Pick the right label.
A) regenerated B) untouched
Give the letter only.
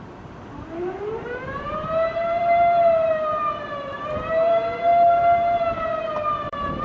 A